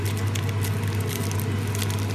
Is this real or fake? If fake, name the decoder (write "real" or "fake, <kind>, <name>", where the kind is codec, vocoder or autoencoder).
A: real